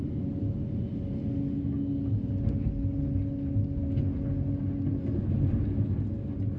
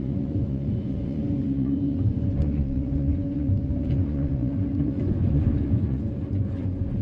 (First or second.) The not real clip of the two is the second